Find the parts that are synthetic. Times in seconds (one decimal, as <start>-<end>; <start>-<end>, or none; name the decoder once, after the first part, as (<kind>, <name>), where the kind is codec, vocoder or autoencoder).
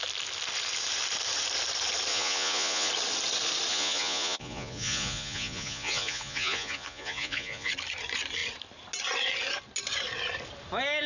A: 2.1-2.9 (vocoder, Vocos); 3.7-7.7